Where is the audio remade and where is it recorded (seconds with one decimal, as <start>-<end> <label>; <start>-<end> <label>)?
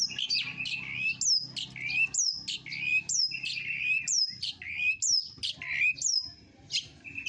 0.0-7.3 recorded